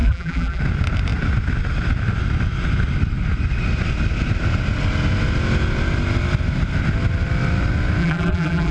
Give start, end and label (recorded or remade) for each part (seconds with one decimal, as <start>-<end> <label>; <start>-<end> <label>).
0.0-0.6 remade; 0.6-8.0 recorded; 8.0-8.7 remade